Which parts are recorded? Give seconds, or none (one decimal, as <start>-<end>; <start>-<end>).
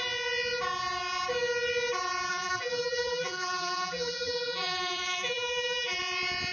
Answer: 0.0-2.3; 6.0-6.5